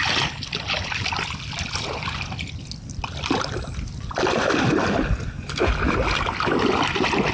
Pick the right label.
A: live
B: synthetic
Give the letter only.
A